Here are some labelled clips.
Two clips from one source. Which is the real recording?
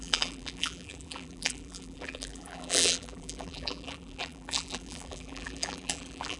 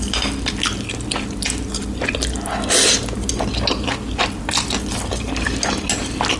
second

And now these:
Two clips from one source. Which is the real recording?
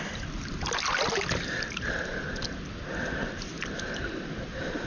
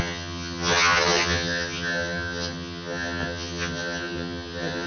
first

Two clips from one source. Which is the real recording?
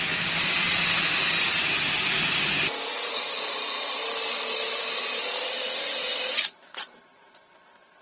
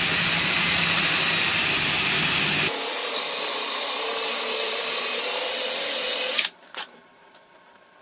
first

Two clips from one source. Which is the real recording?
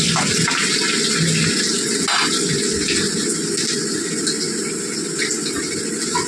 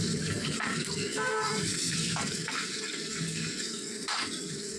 first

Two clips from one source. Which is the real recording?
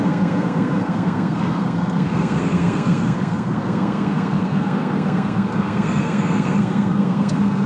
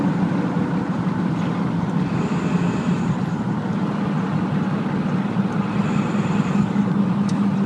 second